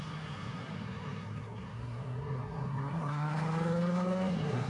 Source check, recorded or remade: remade